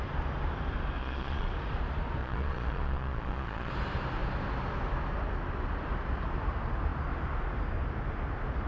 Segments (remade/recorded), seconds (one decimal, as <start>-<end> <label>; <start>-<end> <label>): 0.0-1.0 recorded; 1.0-1.5 remade; 1.5-2.2 recorded; 2.2-3.7 remade; 3.7-8.7 recorded

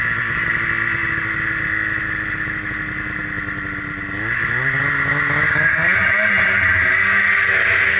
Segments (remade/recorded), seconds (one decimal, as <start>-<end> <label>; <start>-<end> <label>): 0.0-8.0 recorded

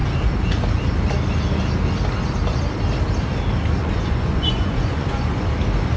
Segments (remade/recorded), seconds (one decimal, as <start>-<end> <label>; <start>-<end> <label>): 0.0-3.8 recorded; 3.8-5.5 remade; 5.5-6.0 recorded

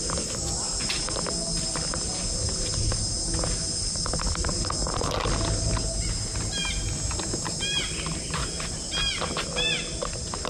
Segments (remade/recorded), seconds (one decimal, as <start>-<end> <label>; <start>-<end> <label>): 0.0-10.5 recorded

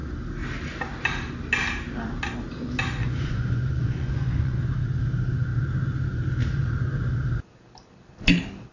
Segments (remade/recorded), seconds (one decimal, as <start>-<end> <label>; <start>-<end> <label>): 0.0-3.0 recorded; 3.0-4.6 remade; 4.6-8.7 recorded

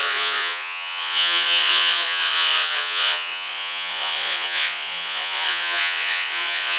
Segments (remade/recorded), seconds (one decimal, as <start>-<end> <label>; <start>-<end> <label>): 0.0-6.8 remade

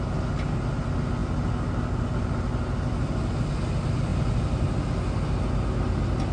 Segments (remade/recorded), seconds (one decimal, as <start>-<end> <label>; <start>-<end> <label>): 0.0-6.3 recorded

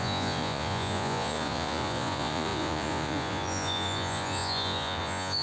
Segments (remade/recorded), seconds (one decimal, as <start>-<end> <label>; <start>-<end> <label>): 0.0-5.4 remade